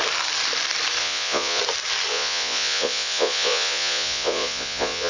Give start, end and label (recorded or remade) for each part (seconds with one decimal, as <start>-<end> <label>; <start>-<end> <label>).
0.0-1.0 recorded; 1.0-1.6 remade; 1.6-2.1 recorded; 2.1-5.1 remade